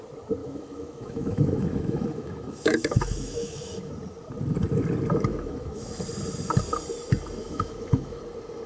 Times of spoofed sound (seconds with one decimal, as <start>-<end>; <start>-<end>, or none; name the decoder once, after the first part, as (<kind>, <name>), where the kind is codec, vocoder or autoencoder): 0.4-3.9 (autoencoder, DAC-VAE); 5.3-6.0; 7.4-8.2